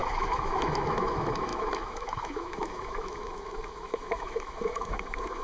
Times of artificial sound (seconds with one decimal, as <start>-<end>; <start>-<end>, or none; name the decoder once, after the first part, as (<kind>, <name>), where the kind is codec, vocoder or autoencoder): 0.0-5.4 (autoencoder, DAC-VAE)